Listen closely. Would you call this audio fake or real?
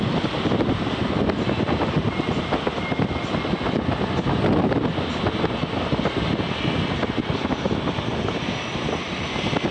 real